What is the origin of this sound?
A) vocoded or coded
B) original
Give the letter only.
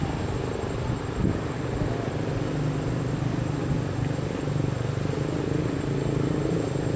B